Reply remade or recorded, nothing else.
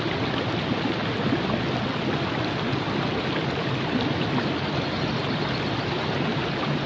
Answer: recorded